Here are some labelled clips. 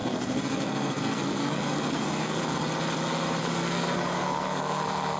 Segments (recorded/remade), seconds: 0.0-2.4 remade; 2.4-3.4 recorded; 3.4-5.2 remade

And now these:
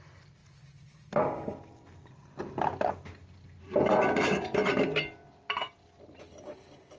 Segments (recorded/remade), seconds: 0.0-7.0 recorded

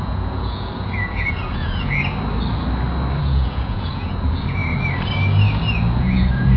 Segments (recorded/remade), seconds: 0.0-2.0 remade; 2.0-3.2 recorded; 3.2-4.6 remade; 4.6-6.0 recorded; 6.0-6.6 remade

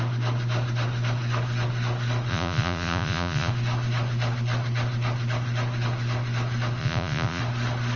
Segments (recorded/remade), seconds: 0.0-2.3 recorded; 2.3-3.5 remade; 3.5-6.8 recorded; 6.8-7.4 remade; 7.4-8.0 recorded

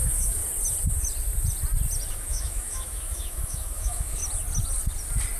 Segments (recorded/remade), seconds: 0.0-0.4 remade; 0.4-2.1 recorded; 2.1-4.2 remade; 4.2-5.4 recorded